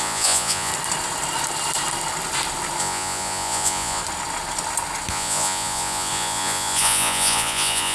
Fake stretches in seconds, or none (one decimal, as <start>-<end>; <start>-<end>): 0.0-0.7; 2.8-4.0; 5.1-7.9